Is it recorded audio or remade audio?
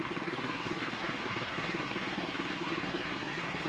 remade